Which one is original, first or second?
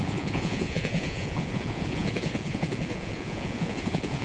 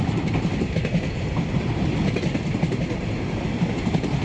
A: second